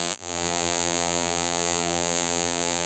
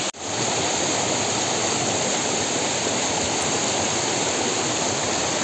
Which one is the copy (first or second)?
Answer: first